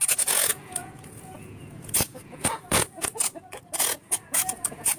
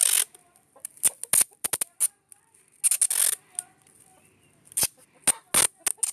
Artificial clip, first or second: first